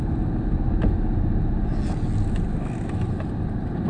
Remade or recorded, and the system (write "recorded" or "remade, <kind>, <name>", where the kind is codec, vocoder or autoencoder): recorded